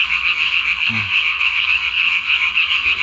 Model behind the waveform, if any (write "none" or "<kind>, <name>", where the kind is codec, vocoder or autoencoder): codec, SNAC